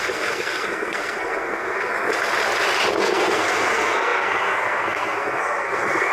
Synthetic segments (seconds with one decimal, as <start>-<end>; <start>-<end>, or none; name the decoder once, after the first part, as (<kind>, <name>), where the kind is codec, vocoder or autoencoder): 0.0-1.9 (codec, SNAC); 3.0-6.1